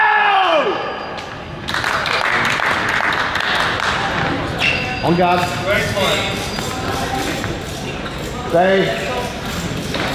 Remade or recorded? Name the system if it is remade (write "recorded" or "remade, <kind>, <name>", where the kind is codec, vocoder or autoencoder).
recorded